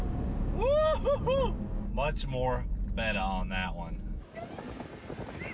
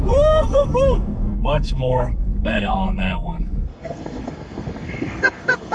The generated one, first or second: second